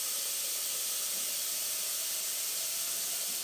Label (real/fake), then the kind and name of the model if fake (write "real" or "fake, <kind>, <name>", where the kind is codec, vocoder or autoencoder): real